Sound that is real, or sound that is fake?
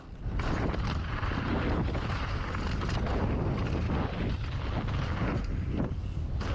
real